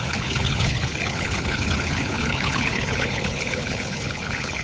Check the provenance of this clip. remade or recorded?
remade